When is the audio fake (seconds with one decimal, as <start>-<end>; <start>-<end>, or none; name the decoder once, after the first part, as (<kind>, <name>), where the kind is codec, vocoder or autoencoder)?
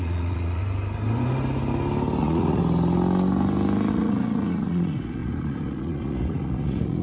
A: 0.0-0.6 (vocoder, Vocos); 2.2-2.6; 3.9-7.0